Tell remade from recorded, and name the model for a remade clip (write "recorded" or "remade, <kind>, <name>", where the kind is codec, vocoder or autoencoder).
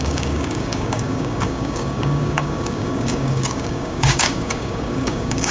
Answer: remade, codec, DAC